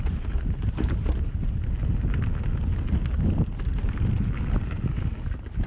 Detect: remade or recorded recorded